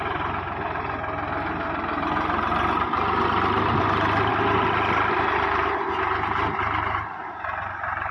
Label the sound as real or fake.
real